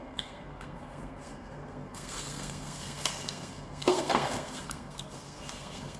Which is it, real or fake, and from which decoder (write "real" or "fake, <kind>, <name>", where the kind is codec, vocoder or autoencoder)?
fake, codec, SNAC